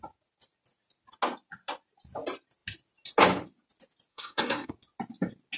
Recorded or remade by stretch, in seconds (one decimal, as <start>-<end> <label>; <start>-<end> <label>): 0.0-4.1 recorded; 4.1-4.7 remade; 4.7-5.6 recorded